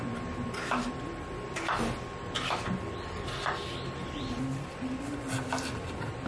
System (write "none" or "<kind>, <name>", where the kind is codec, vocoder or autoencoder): none